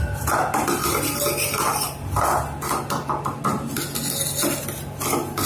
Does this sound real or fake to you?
real